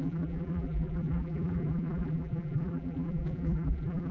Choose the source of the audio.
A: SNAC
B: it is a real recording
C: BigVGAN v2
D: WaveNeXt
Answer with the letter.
C